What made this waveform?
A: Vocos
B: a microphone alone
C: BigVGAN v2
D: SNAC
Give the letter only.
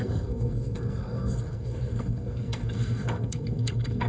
D